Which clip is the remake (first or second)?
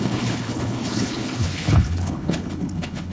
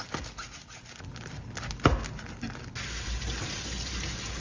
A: first